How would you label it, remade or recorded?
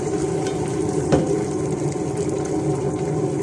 recorded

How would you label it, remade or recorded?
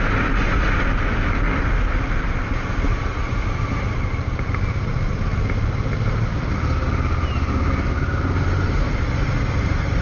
recorded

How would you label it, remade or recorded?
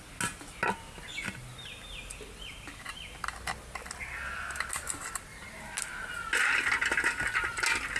recorded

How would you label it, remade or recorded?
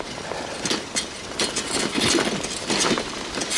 recorded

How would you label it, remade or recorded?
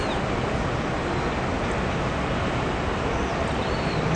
recorded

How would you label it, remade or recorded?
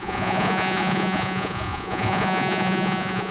remade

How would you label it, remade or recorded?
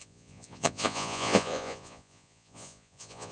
remade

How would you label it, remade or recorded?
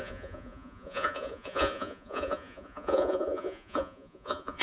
remade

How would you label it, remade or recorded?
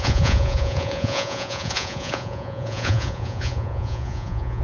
remade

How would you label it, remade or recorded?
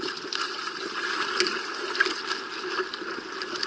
recorded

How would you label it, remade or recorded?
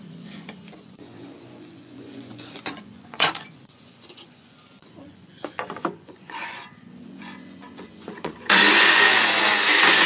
remade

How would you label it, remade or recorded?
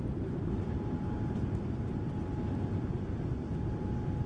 recorded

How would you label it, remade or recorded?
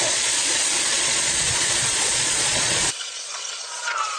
remade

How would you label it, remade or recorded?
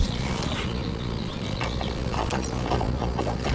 remade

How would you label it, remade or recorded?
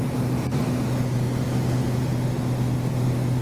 recorded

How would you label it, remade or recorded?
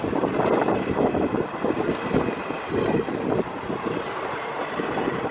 recorded